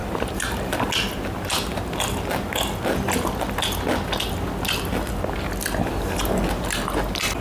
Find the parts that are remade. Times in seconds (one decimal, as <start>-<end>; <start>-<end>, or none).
0.0-0.9